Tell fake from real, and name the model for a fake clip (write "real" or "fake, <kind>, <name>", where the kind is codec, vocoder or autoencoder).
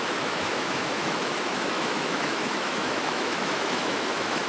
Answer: fake, autoencoder, DAC-VAE